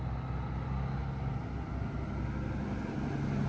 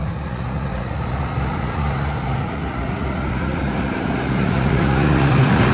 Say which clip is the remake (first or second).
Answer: second